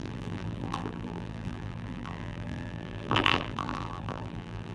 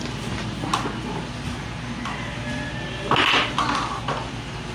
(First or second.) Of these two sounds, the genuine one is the second